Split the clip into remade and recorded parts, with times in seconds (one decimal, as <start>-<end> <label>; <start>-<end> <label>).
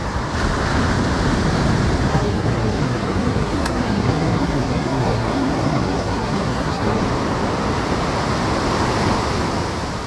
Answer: 0.0-2.1 recorded; 2.1-7.0 remade; 7.0-10.1 recorded